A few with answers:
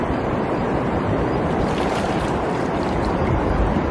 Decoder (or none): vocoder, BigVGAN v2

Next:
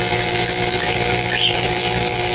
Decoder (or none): vocoder, BigVGAN v2